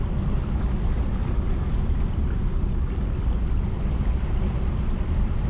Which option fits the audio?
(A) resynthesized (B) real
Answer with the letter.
B